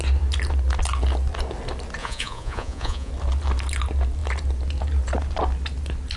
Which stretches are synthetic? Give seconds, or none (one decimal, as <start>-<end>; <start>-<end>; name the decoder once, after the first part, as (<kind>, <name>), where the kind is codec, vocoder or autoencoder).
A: 2.0-3.1 (vocoder, Vocos)